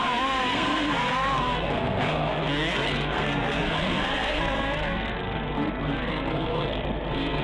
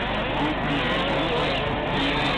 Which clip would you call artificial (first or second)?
first